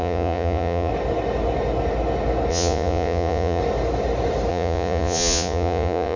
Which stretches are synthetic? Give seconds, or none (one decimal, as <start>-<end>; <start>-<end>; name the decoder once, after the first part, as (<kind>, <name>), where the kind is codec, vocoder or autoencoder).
0.0-0.9 (vocoder, Vocos); 2.5-3.6; 4.5-6.2